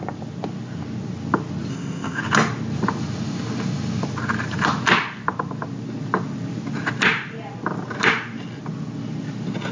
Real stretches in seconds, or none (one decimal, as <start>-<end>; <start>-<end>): 0.0-1.7; 2.2-9.7